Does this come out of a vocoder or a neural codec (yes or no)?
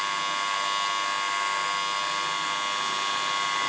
no